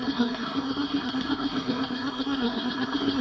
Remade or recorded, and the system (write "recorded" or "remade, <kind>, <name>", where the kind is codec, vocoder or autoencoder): remade, codec, SNAC